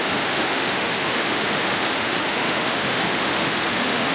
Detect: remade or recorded remade